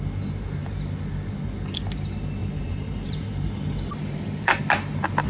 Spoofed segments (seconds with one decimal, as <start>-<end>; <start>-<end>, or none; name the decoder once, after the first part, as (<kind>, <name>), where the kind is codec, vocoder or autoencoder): 2.4-4.6 (vocoder, BigVGAN v2)